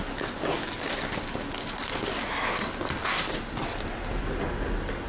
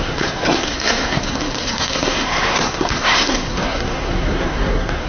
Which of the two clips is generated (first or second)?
second